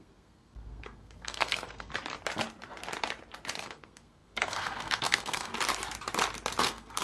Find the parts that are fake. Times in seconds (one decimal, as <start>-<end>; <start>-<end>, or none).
0.0-1.9; 3.6-5.5; 6.6-7.0